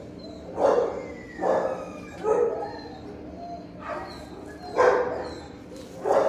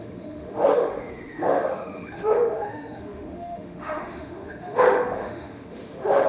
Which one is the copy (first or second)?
second